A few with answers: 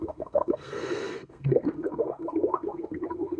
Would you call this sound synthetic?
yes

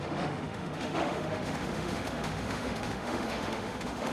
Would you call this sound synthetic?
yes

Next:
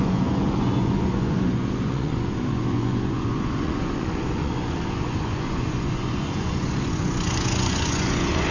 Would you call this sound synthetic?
yes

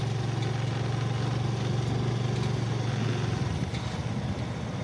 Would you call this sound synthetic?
no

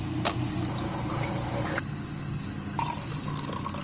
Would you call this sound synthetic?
no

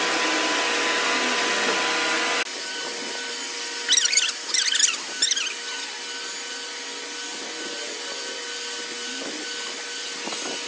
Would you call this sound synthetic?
no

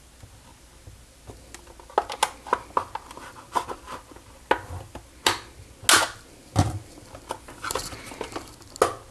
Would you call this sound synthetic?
no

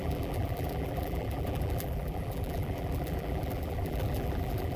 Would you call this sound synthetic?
yes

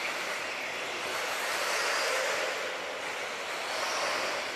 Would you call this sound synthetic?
no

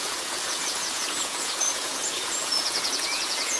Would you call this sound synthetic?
yes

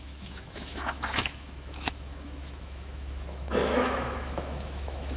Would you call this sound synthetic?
yes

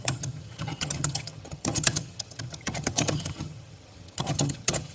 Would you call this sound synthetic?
yes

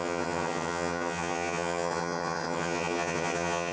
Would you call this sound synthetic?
yes